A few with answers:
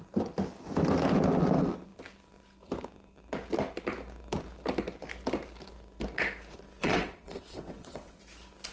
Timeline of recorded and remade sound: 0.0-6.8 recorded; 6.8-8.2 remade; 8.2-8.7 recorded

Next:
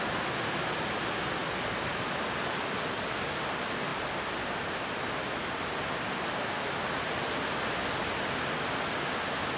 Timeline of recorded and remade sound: 0.0-9.6 recorded

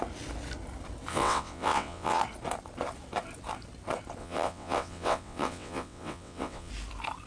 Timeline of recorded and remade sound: 0.0-1.1 recorded; 1.1-2.2 remade; 2.2-4.2 recorded; 4.2-6.7 remade; 6.7-7.3 recorded

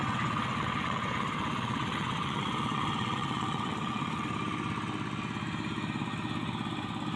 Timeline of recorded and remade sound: 0.0-4.3 remade; 4.3-7.2 recorded

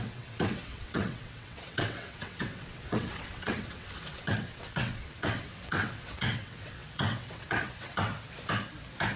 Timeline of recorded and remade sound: 0.0-8.1 remade; 8.1-9.2 recorded